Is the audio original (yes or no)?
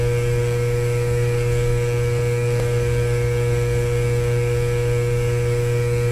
no